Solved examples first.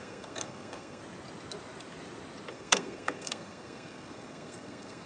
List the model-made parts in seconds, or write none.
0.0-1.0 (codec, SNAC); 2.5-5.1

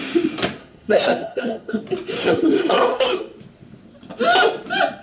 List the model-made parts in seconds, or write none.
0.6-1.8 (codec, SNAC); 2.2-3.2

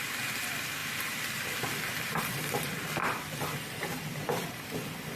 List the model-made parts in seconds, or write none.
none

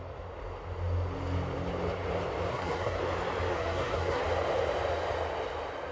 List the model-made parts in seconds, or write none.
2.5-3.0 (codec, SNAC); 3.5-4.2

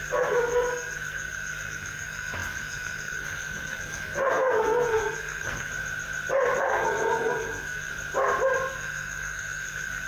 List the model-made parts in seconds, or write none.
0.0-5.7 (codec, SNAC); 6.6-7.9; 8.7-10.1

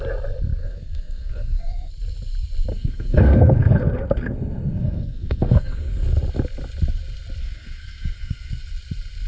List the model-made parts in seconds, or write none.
0.6-1.9 (codec, SNAC); 2.7-6.1; 7.4-8.6

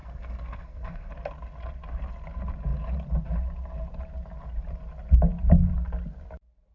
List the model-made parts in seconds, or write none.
0.0-1.1 (codec, SNAC)

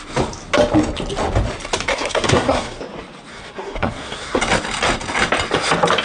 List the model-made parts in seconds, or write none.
1.9-2.8 (codec, SNAC); 3.3-4.4